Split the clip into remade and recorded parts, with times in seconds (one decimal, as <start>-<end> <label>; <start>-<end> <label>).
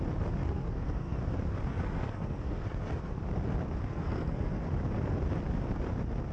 0.0-0.4 recorded; 0.4-1.2 remade; 1.2-1.7 recorded; 1.7-3.2 remade; 3.2-3.9 recorded; 3.9-4.7 remade; 4.7-6.3 recorded